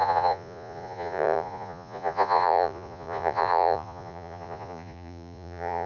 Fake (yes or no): yes